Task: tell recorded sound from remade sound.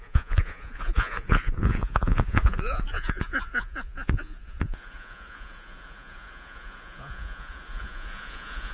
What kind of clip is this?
remade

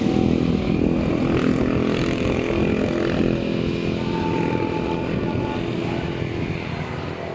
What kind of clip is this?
recorded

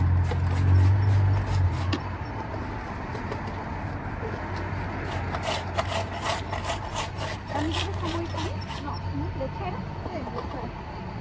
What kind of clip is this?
recorded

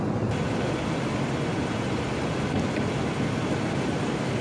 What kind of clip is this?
recorded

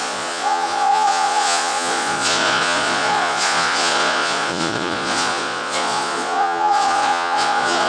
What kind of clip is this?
remade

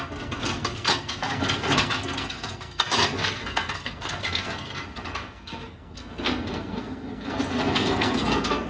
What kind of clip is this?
remade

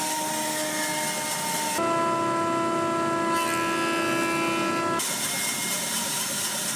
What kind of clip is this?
recorded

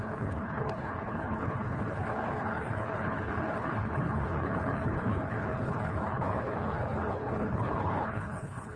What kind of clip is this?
remade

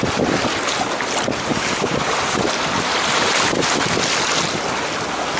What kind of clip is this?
recorded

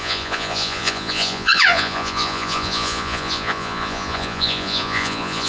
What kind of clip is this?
remade